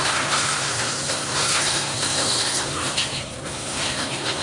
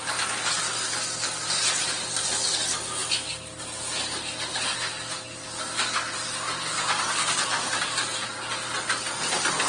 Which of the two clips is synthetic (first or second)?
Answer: first